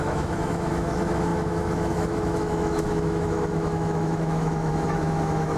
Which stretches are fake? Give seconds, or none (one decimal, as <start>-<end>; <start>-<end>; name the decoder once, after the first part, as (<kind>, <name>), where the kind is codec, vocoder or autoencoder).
0.0-5.6 (autoencoder, DAC-VAE)